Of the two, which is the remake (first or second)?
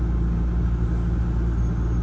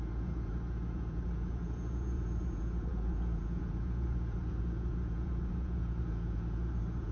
second